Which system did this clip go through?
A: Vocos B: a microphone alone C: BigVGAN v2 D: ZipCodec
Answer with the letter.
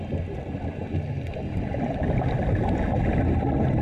B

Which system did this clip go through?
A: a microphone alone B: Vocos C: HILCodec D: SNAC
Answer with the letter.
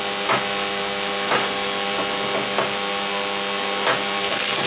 A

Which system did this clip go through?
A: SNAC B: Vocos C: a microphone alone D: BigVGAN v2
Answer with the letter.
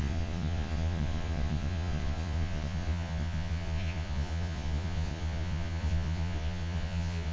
B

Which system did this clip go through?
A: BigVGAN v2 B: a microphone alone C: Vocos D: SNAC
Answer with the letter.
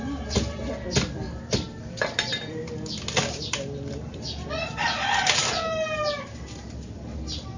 A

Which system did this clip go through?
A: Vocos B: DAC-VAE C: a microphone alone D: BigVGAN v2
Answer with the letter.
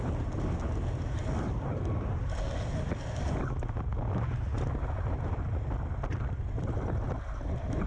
C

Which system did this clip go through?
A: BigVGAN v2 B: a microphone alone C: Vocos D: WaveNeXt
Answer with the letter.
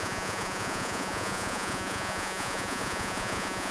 C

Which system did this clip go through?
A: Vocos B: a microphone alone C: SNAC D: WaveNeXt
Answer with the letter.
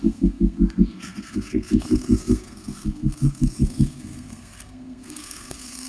C